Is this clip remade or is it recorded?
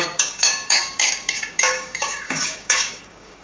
remade